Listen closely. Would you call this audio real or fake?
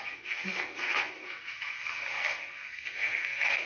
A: fake